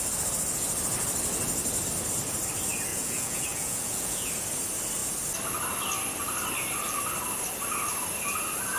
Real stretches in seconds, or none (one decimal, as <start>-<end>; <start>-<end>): 0.0-2.9; 4.3-8.8